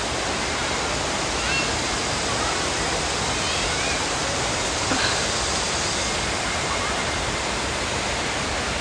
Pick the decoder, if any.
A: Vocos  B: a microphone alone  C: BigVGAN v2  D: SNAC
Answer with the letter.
B